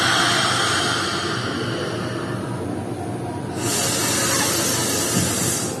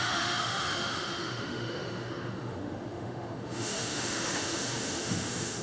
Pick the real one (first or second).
first